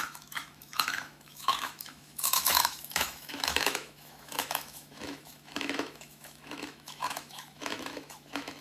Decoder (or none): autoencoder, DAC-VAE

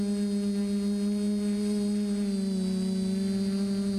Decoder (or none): none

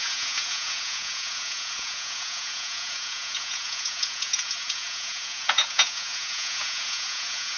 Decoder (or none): vocoder, Vocos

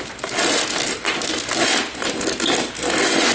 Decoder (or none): none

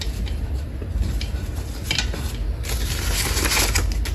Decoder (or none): none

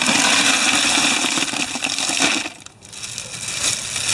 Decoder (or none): none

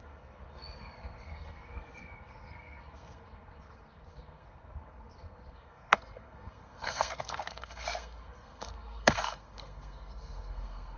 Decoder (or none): codec, SNAC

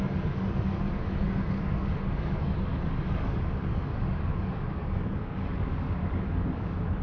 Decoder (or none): codec, DAC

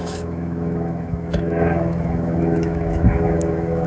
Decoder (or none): autoencoder, DAC-VAE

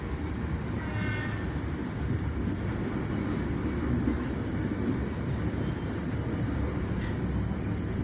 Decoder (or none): none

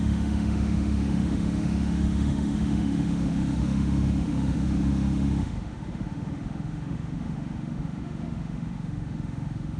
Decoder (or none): autoencoder, DAC-VAE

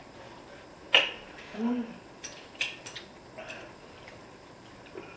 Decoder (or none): none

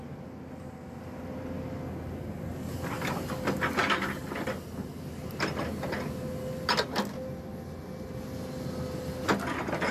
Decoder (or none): none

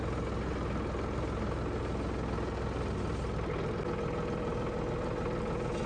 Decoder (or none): none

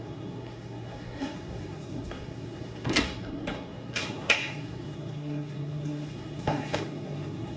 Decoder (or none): codec, SNAC